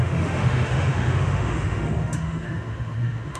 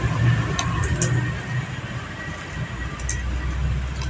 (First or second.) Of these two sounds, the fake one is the first